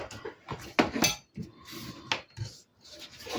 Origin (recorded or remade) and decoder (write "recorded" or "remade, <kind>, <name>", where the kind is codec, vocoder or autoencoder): recorded